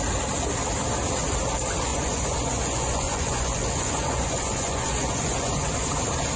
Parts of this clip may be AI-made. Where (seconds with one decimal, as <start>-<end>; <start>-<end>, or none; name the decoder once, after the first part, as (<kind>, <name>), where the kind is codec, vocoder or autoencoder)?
1.9-5.7 (vocoder, Vocos)